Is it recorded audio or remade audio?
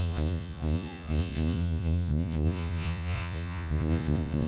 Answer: remade